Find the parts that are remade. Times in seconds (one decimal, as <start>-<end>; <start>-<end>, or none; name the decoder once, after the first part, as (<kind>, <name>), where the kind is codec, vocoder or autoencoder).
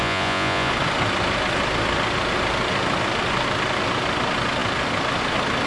0.0-0.7 (vocoder, Vocos)